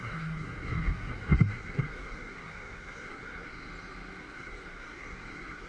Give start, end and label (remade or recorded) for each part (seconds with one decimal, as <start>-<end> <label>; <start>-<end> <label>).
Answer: 0.0-3.7 remade; 3.7-4.2 recorded; 4.2-5.7 remade